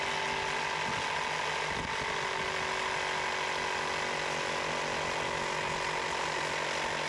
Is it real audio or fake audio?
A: real